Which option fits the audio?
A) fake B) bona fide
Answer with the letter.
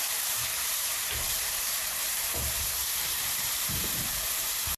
A